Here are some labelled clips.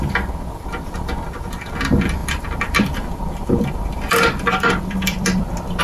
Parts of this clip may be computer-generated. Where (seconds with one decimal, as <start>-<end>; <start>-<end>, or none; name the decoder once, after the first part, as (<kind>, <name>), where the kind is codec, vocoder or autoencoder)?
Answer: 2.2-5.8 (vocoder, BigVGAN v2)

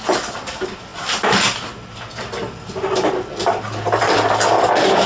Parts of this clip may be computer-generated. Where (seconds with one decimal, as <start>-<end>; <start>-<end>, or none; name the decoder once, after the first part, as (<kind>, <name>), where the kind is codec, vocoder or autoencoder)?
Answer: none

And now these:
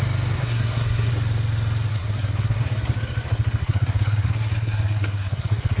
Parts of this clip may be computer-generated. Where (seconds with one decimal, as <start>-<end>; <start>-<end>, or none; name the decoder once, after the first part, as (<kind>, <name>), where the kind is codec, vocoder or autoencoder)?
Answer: 0.4-1.1 (codec, SNAC); 1.9-2.6; 3.6-5.8

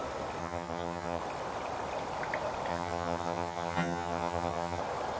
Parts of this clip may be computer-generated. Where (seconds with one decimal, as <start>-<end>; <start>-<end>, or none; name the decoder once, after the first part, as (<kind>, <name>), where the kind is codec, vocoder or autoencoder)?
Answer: 0.4-1.2 (vocoder, HiFi-GAN); 2.7-4.8

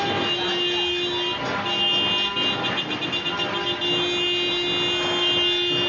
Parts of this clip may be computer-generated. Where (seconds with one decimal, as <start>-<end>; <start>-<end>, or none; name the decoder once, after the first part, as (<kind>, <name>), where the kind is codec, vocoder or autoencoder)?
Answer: none